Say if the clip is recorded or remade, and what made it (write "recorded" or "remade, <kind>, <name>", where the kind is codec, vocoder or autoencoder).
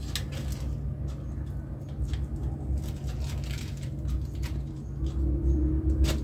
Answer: recorded